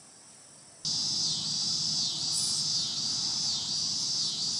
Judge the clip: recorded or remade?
recorded